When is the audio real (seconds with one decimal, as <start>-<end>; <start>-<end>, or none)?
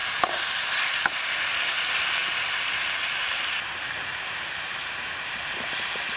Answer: 0.0-6.2